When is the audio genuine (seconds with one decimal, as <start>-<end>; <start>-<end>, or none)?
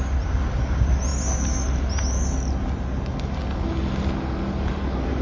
0.0-5.2